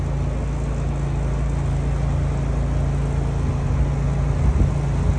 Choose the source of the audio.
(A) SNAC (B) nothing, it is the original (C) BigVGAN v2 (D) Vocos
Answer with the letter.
B